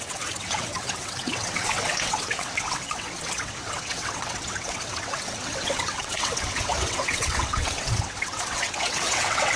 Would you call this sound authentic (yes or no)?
no